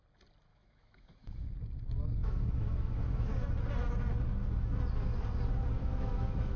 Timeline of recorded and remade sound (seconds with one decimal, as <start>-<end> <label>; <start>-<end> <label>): 0.0-0.5 recorded; 0.5-1.5 remade; 1.5-2.2 recorded; 2.2-3.3 remade; 3.3-5.8 recorded; 5.8-6.6 remade

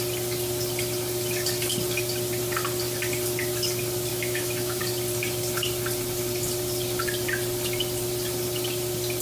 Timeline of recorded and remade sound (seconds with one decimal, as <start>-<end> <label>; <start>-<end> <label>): 0.0-4.1 recorded; 4.1-4.8 remade; 4.8-9.2 recorded

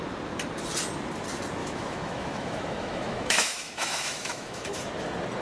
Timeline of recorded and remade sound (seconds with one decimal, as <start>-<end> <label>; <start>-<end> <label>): 0.0-1.6 recorded; 1.6-4.8 remade; 4.8-5.4 recorded